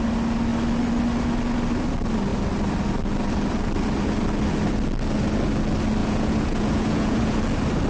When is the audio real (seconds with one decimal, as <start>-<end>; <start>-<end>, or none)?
0.0-6.0; 7.4-7.9